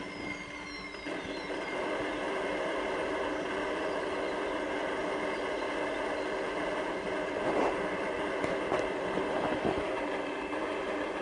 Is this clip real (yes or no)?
yes